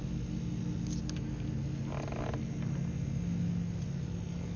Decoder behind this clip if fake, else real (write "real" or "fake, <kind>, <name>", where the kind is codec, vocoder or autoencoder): real